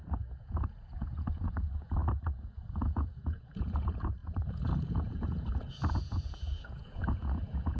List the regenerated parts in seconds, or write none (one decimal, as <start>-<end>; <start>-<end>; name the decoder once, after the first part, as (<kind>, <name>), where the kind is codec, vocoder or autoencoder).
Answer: 0.0-7.8 (vocoder, Vocos)